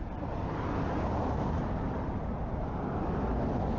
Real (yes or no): yes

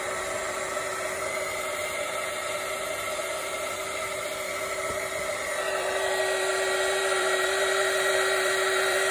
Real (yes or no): no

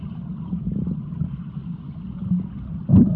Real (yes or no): yes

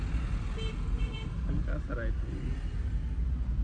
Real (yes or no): yes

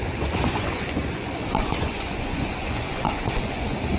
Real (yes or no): no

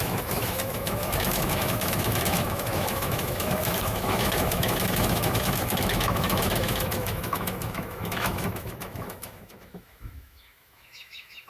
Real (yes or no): no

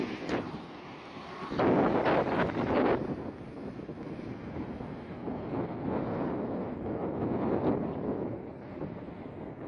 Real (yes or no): yes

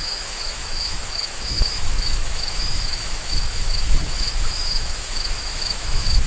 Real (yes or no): no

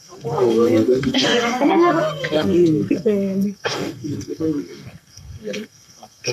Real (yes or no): no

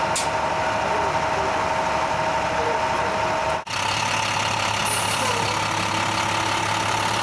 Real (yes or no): yes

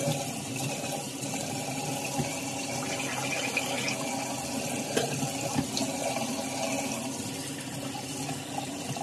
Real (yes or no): yes